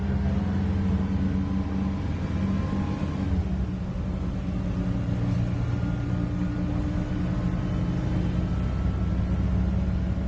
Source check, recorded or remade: recorded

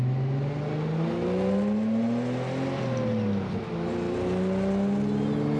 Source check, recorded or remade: recorded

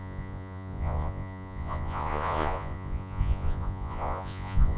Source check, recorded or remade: remade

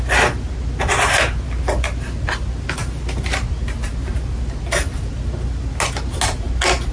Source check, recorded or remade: recorded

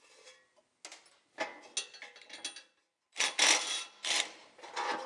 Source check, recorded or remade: recorded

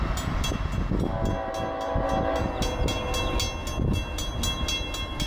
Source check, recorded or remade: recorded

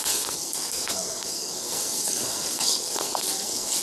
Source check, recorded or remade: remade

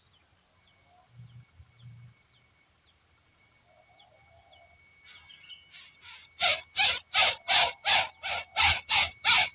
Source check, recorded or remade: recorded